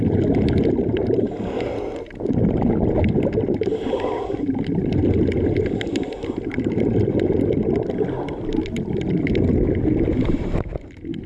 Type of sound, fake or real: real